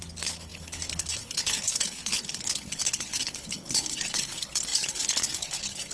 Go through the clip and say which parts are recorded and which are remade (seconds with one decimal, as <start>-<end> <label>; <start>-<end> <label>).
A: 0.0-5.9 remade